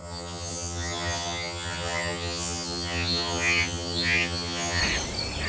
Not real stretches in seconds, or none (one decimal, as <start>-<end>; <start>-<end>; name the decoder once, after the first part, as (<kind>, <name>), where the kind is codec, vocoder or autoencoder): 0.0-4.8 (vocoder, HiFi-GAN)